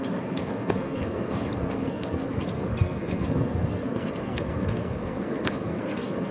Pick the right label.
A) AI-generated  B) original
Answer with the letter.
A